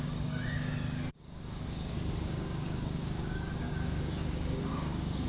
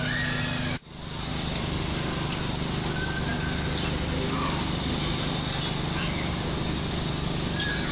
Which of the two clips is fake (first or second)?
first